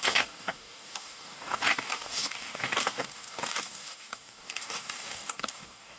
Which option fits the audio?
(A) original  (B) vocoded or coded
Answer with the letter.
B